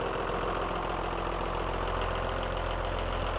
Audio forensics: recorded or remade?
recorded